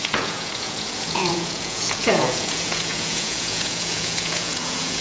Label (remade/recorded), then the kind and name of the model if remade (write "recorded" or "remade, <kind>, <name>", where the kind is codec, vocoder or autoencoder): remade, vocoder, Vocos